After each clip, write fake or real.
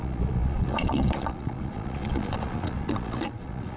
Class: fake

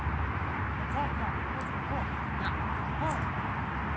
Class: real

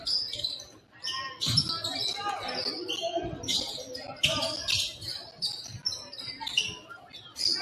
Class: real